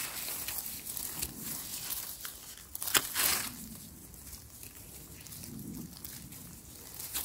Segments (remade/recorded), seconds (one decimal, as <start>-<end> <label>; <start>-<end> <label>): 0.0-6.4 recorded; 6.4-7.2 remade

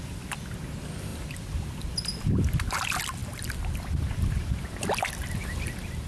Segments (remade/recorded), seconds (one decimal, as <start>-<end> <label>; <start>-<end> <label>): 0.0-3.2 recorded; 3.2-6.1 remade

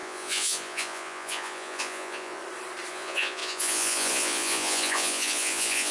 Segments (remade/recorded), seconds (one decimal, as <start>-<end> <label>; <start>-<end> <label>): 0.0-2.4 remade; 2.4-2.9 recorded; 2.9-5.9 remade